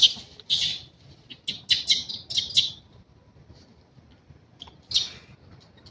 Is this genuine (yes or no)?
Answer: yes